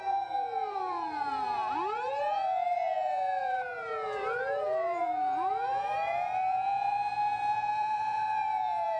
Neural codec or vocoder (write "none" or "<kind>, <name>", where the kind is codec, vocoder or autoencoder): vocoder, Vocos